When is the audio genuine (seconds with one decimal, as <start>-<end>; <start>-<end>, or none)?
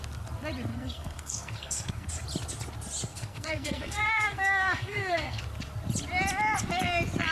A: 0.0-0.7; 2.1-3.1; 5.4-7.3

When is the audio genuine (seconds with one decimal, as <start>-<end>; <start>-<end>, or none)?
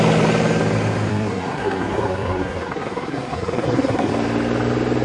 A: 0.0-1.1; 4.1-5.0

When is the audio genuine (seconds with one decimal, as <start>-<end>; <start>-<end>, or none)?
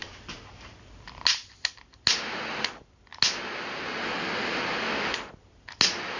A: 0.0-6.2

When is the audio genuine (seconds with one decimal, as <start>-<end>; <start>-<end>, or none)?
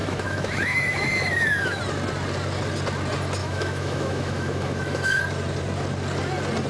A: 1.8-3.4; 5.2-6.7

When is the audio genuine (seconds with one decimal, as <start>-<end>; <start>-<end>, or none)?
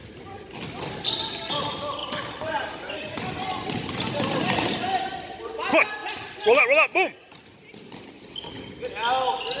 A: 0.0-2.0; 2.5-9.6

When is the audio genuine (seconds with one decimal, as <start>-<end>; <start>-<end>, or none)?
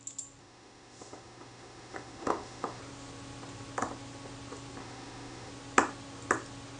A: 0.0-0.4; 2.8-4.8; 5.5-6.8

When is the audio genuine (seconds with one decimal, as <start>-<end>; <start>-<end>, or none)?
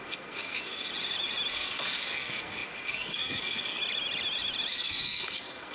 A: 0.9-1.5; 3.8-4.7